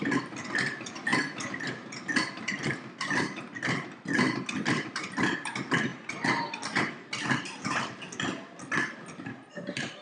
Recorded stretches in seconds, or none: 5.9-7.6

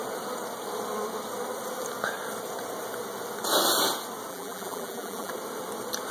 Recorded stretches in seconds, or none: 0.0-4.3; 5.3-6.1

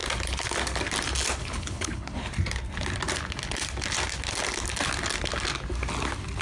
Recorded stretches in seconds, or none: 0.0-1.4; 2.3-6.4

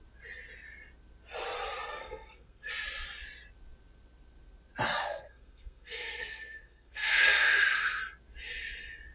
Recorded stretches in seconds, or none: 0.0-1.9; 2.7-5.0; 8.0-9.1

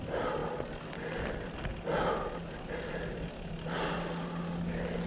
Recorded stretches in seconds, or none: 0.0-5.1